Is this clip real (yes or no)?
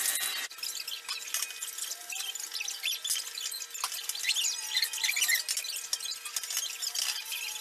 yes